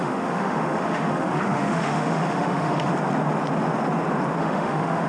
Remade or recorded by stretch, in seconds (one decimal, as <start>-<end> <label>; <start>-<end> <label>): 0.0-2.9 remade; 2.9-4.4 recorded; 4.4-5.1 remade